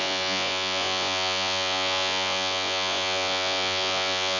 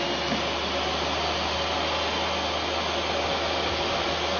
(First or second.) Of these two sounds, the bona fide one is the second